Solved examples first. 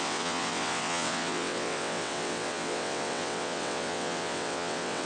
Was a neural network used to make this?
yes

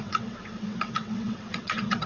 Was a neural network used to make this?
yes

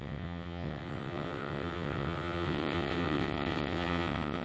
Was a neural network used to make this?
yes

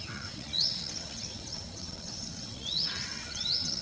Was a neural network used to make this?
yes